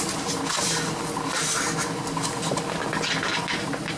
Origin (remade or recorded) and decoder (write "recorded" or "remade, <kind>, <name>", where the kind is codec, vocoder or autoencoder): recorded